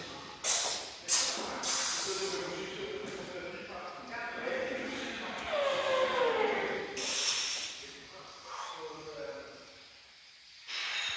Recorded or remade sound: recorded